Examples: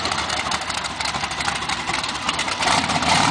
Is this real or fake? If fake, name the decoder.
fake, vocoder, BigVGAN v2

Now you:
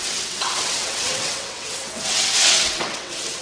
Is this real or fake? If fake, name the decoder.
fake, vocoder, WaveNeXt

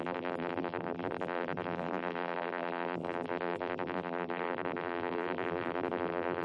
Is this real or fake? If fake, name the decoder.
fake, vocoder, BigVGAN v2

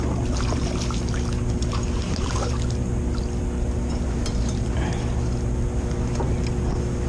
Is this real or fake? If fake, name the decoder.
real